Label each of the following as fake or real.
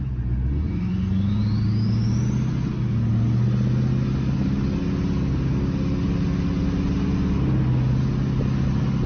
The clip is real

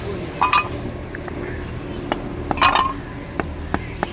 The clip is real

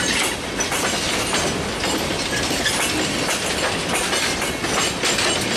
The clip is real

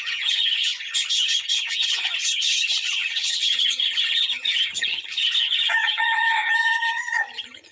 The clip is fake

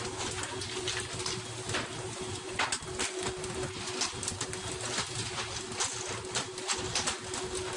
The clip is real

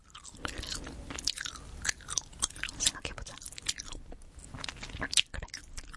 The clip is real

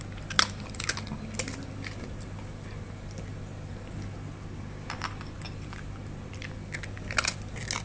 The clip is real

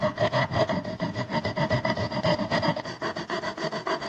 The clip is real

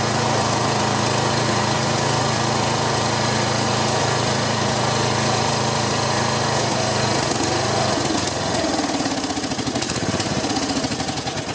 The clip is fake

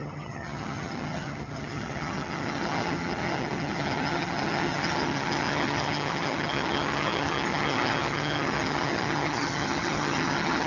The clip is fake